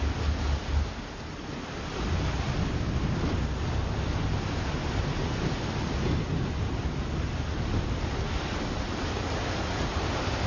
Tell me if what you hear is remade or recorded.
recorded